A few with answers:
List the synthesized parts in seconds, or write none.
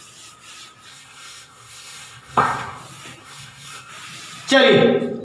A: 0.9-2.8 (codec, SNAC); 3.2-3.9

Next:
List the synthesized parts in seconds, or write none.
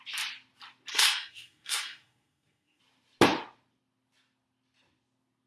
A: 0.9-2.8 (codec, SNAC)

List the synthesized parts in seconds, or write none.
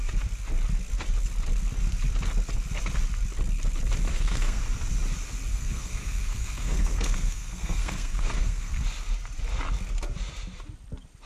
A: 4.1-4.6 (codec, SNAC); 5.5-8.8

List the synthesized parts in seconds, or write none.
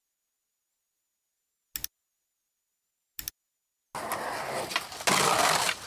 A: none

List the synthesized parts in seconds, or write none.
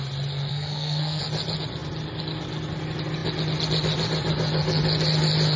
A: 0.5-1.2 (codec, SNAC)